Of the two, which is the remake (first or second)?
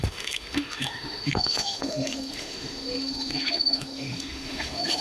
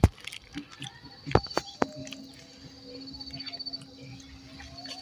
first